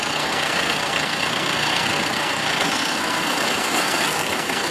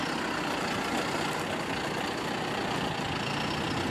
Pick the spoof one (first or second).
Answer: first